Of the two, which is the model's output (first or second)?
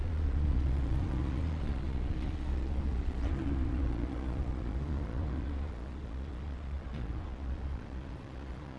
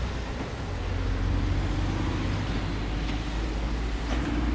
first